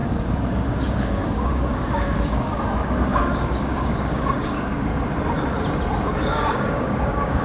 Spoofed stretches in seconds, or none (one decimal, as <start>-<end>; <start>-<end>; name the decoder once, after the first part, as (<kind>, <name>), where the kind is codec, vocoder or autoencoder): 0.0-4.9 (codec, DAC); 6.2-7.4